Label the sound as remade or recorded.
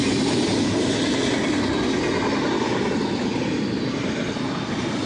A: recorded